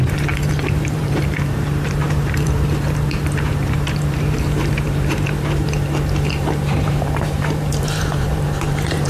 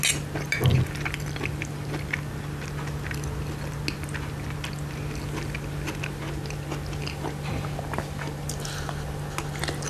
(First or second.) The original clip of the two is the second